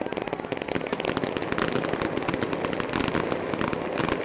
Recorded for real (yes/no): yes